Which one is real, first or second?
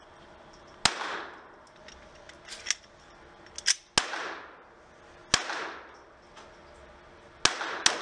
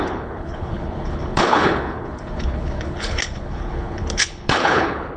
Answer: first